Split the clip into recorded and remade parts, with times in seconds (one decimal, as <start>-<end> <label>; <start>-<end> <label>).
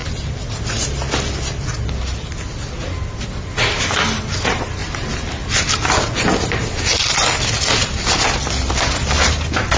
0.0-9.8 recorded